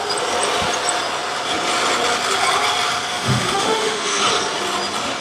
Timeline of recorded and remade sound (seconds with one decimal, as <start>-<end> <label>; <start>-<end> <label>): 0.0-3.1 recorded; 3.1-4.2 remade; 4.2-5.2 recorded